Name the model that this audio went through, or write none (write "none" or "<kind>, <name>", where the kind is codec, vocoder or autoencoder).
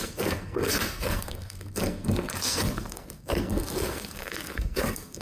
codec, SNAC